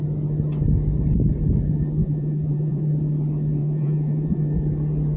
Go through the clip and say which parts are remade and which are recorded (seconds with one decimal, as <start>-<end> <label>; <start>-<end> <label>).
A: 0.0-2.0 recorded; 2.0-3.0 remade; 3.0-3.6 recorded; 3.6-4.4 remade; 4.4-5.2 recorded